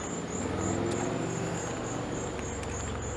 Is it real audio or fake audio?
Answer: real